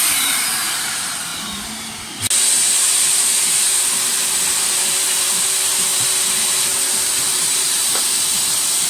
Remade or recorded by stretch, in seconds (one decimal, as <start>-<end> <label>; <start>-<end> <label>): 0.0-1.3 remade; 1.3-3.1 recorded; 3.1-5.9 remade; 5.9-6.5 recorded; 6.5-8.9 remade